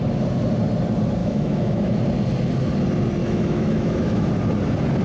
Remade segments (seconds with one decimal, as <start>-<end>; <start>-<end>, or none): 1.2-2.0; 3.2-4.3